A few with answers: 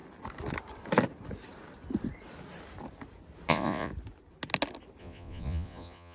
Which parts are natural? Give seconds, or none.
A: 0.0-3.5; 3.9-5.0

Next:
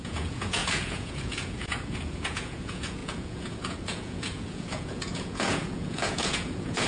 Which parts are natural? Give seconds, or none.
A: none

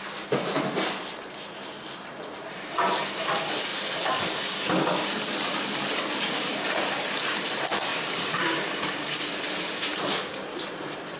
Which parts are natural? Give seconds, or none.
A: 0.0-7.9; 9.2-11.2

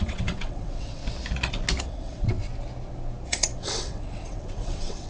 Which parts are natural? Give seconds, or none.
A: 1.0-1.8; 2.5-3.3

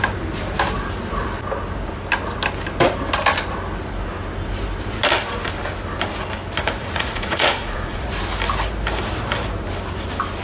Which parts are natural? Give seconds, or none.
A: 0.0-6.8; 8.1-10.4

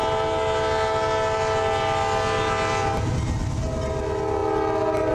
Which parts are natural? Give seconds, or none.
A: 0.0-5.1